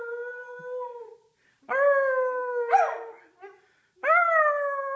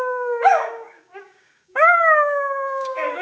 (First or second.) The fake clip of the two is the second